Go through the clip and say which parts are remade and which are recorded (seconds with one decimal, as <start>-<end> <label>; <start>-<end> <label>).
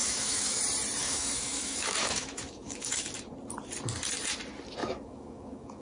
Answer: 0.0-0.6 remade; 0.6-1.0 recorded; 1.0-3.1 remade; 3.1-4.8 recorded; 4.8-5.8 remade